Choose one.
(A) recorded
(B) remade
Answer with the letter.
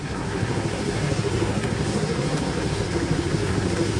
B